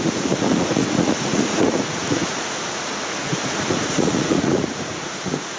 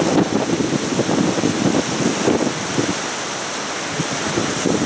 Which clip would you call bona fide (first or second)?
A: second